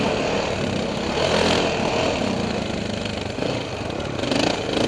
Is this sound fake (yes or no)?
no